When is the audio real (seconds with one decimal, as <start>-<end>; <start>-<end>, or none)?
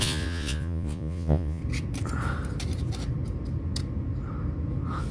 1.6-5.1